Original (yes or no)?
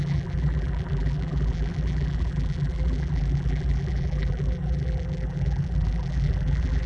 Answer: no